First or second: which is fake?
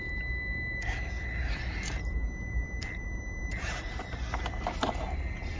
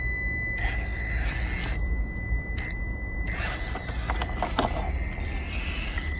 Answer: first